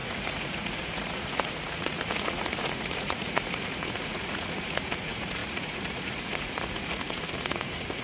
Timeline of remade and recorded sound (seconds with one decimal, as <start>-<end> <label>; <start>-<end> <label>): 0.0-8.0 remade